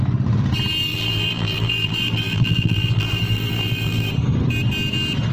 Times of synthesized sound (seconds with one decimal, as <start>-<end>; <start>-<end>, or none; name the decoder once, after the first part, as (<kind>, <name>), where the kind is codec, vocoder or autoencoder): 0.9-4.1 (vocoder, BigVGAN v2)